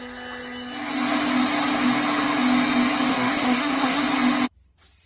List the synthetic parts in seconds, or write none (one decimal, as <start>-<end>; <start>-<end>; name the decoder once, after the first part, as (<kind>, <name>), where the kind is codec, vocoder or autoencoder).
3.1-4.0 (codec, SNAC)